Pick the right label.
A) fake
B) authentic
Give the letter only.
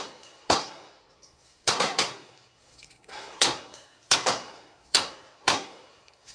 A